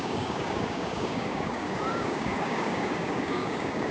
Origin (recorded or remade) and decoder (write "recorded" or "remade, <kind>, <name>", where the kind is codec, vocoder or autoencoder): remade, codec, DAC